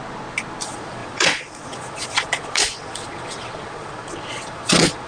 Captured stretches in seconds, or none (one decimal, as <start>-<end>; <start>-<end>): 0.0-0.6

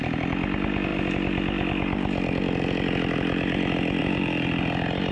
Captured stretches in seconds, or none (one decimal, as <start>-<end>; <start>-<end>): 0.0-5.1

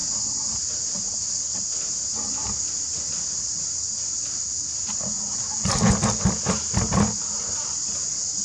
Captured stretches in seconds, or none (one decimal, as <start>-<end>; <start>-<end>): 0.0-5.3; 6.2-8.4

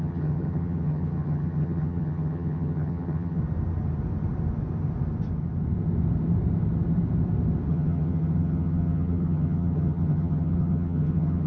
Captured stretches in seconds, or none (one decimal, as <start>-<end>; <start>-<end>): 3.4-7.7